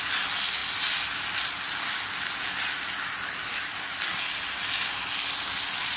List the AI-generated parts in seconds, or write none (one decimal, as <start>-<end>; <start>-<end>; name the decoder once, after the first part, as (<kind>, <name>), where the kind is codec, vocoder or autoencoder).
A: none